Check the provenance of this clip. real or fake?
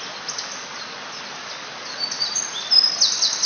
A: real